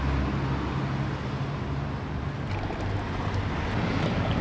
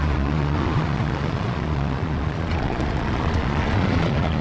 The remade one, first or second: second